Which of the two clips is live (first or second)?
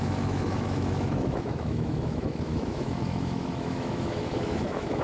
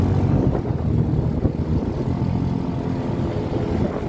second